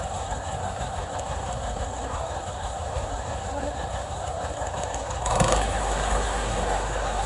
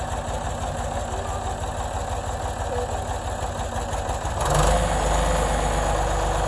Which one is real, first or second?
second